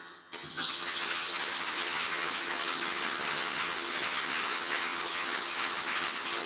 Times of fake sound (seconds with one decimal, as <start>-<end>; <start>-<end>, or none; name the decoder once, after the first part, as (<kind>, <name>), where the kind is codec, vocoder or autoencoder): 0.0-6.5 (vocoder, HiFi-GAN)